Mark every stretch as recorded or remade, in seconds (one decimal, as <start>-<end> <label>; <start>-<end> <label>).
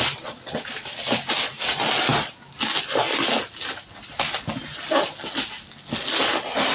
0.0-6.7 recorded